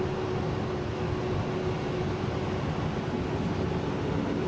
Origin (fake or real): real